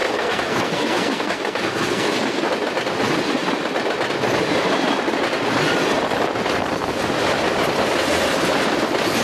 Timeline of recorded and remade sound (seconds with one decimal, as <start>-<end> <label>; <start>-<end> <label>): 0.0-2.5 remade; 2.5-9.2 recorded